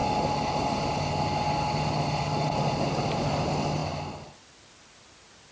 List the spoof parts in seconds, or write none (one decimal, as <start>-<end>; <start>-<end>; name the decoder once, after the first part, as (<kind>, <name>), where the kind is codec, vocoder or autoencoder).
none